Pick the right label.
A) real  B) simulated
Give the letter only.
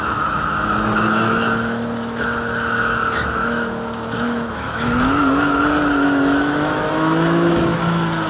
B